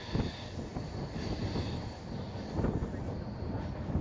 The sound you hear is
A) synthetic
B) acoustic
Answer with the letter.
B